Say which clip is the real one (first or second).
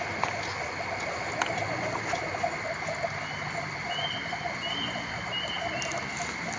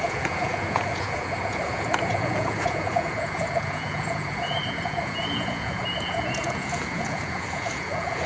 first